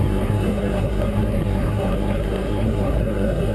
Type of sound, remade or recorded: remade